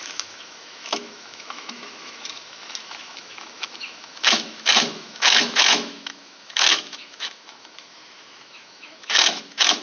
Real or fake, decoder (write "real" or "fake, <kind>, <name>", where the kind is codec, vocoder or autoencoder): fake, autoencoder, DAC-VAE